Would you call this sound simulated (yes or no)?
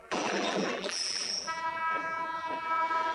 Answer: yes